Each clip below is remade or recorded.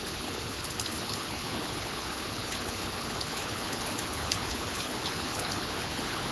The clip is remade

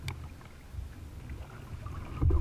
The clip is recorded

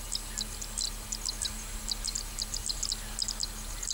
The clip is recorded